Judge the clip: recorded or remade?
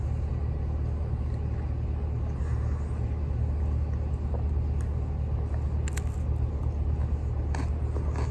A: recorded